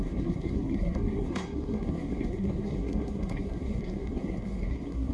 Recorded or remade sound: remade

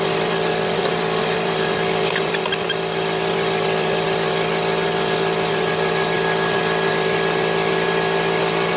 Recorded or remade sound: recorded